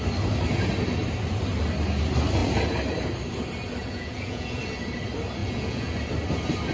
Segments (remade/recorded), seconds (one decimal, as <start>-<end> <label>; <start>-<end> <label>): 0.0-3.8 recorded; 3.8-4.6 remade; 4.6-5.4 recorded; 5.4-6.0 remade; 6.0-6.7 recorded